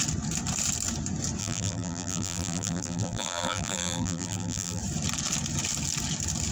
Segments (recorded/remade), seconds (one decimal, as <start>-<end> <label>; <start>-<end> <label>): 0.0-1.4 recorded; 1.4-4.8 remade; 4.8-6.5 recorded